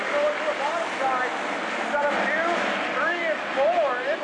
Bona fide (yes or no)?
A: yes